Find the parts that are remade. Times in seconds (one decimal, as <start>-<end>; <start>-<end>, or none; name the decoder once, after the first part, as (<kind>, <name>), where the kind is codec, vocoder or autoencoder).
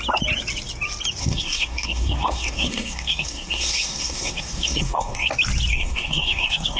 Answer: 1.2-5.3 (codec, SNAC); 5.7-6.8